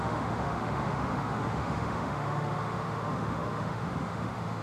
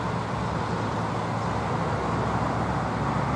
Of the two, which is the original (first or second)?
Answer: second